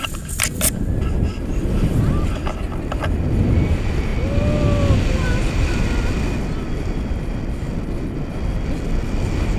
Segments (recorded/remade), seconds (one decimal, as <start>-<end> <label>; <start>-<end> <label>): 0.0-9.6 recorded